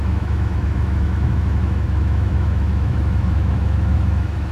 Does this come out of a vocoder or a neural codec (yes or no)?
yes